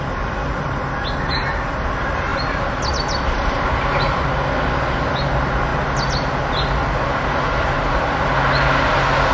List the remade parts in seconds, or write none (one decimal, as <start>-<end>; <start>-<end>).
none